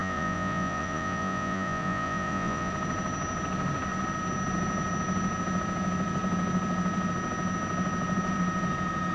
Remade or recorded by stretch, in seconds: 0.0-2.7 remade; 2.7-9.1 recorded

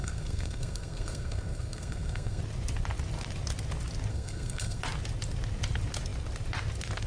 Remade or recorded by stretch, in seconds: 0.0-2.4 remade; 2.4-4.1 recorded; 4.1-4.8 remade; 4.8-7.1 recorded

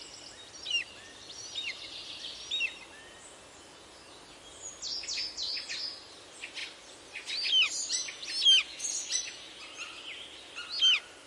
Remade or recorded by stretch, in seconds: 0.0-11.3 recorded

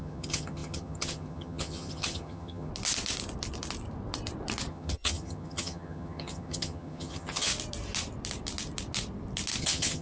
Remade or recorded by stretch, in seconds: 0.0-2.7 remade; 2.7-4.7 recorded; 4.7-7.5 remade; 7.5-9.6 recorded; 9.6-10.0 remade